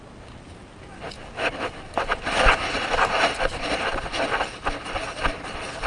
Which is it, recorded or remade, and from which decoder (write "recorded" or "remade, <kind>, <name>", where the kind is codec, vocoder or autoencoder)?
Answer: recorded